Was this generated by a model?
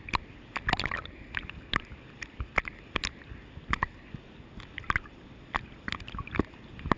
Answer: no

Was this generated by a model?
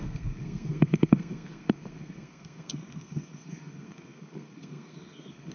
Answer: yes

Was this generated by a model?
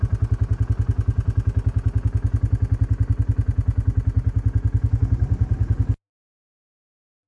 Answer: no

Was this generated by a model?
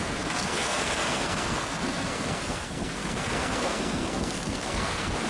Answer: yes